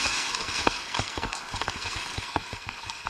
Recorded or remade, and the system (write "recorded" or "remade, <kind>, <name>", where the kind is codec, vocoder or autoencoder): remade, codec, SNAC